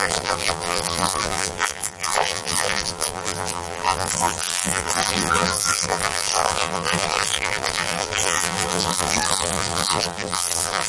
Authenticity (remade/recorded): remade